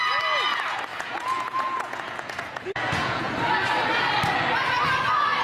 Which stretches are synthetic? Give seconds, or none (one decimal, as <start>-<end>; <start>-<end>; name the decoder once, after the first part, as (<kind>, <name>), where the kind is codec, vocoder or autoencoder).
0.9-3.3 (vocoder, Vocos)